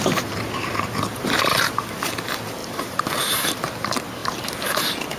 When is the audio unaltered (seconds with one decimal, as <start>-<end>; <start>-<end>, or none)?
1.7-2.6; 3.7-4.2; 4.8-5.2